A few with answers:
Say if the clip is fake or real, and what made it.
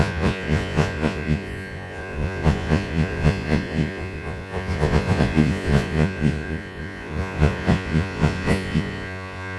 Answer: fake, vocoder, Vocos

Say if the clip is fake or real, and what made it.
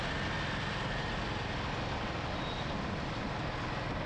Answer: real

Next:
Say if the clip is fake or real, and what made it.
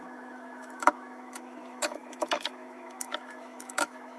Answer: fake, autoencoder, DAC-VAE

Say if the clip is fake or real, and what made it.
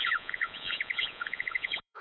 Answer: fake, vocoder, Vocos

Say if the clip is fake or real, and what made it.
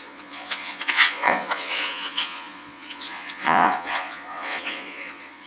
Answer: fake, vocoder, Vocos